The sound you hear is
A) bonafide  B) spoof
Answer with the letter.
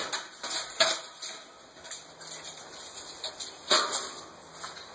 A